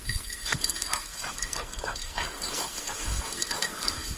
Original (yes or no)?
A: no